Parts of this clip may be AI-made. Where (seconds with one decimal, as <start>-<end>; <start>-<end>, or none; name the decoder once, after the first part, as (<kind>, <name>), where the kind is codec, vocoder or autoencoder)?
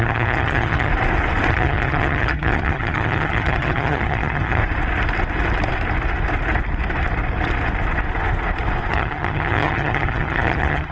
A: 0.0-0.9 (vocoder, HiFi-GAN); 1.5-4.6; 8.9-10.9